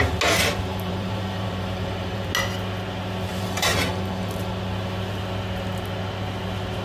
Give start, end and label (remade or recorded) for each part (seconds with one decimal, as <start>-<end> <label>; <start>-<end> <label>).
0.0-0.7 recorded; 0.7-2.3 remade; 2.3-3.3 recorded; 3.3-4.5 remade; 4.5-6.8 recorded